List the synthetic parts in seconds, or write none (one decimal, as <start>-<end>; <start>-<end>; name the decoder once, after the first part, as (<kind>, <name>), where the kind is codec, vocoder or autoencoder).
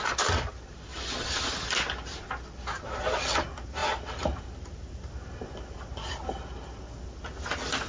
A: none